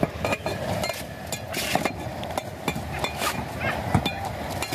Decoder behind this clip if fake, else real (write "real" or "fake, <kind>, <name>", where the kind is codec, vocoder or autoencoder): real